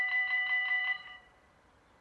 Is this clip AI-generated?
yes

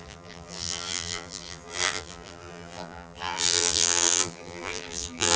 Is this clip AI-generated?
yes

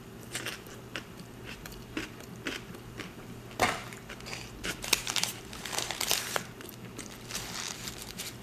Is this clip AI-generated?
yes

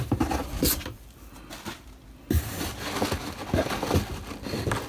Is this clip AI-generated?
no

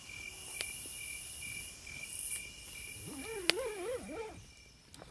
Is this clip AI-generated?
no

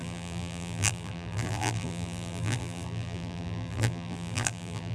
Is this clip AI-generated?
yes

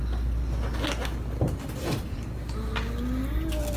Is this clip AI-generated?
no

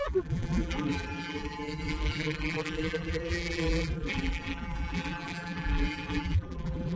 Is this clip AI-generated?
yes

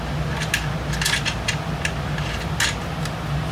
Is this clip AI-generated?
no